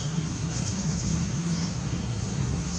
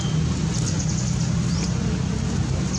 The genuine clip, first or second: second